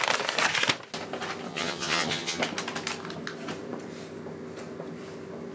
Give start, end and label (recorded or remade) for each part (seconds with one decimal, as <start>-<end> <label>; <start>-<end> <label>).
0.0-1.5 recorded; 1.5-2.4 remade; 2.4-5.5 recorded